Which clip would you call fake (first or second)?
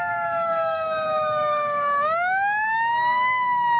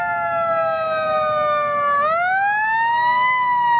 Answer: first